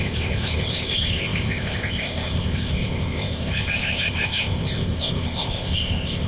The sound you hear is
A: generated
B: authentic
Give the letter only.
A